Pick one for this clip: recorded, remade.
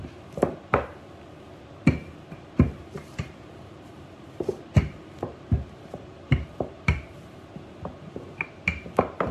remade